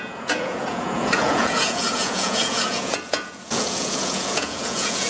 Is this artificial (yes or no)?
yes